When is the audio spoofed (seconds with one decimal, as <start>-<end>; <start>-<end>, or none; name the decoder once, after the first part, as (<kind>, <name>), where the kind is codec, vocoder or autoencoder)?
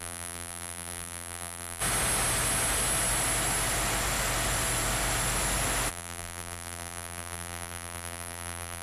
0.0-1.8 (vocoder, BigVGAN v2); 5.9-8.8